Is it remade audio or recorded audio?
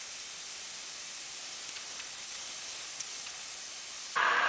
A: recorded